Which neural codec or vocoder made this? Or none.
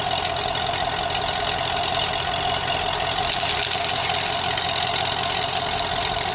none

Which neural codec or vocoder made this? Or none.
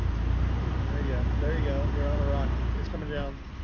none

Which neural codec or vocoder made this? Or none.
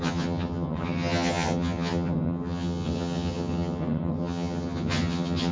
vocoder, HiFi-GAN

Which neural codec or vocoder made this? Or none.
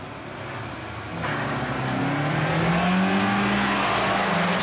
none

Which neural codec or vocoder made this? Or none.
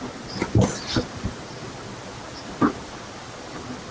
none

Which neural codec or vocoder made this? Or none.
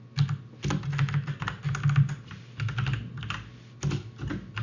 none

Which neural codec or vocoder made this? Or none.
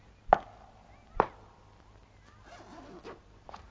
none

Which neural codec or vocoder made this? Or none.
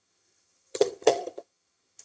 vocoder, HiFi-GAN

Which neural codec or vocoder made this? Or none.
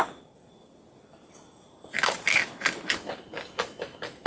none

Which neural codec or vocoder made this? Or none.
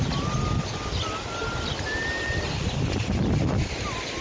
none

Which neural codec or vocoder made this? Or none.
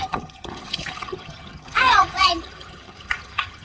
vocoder, HiFi-GAN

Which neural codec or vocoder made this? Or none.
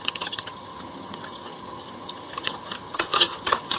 vocoder, HiFi-GAN